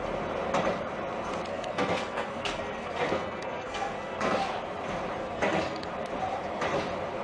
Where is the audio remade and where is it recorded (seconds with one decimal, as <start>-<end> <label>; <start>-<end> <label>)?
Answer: 0.0-1.5 recorded; 1.5-4.4 remade; 4.4-5.2 recorded; 5.2-5.9 remade; 5.9-7.2 recorded